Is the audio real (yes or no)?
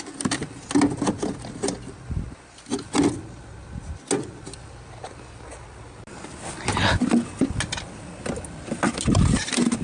yes